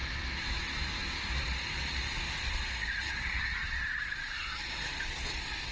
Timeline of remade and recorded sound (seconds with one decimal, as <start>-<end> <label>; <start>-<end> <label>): 0.0-1.0 remade; 1.0-5.7 recorded